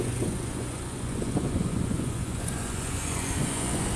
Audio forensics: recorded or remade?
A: remade